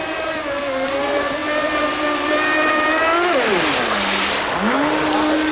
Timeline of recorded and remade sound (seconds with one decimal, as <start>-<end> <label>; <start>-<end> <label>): 0.0-5.5 recorded